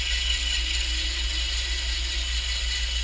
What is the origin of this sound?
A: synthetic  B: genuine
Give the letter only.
B